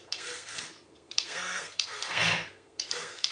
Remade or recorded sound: remade